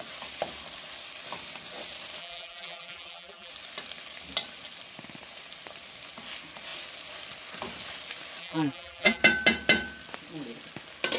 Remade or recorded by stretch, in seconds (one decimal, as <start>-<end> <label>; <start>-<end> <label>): 0.0-2.2 recorded; 2.2-3.5 remade; 3.5-8.4 recorded; 8.4-9.2 remade; 9.2-11.2 recorded